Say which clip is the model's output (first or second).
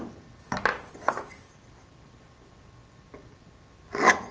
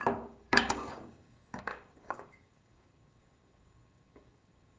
second